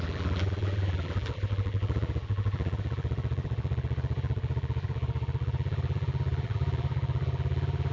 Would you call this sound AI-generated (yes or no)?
yes